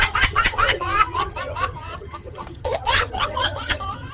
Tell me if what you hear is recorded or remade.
remade